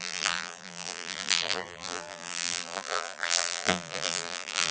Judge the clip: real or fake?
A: fake